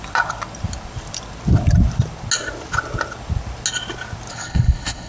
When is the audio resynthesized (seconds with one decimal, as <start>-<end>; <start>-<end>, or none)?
4.3-5.1